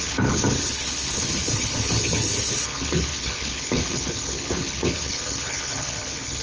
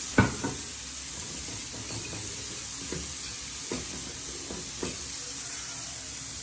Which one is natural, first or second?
second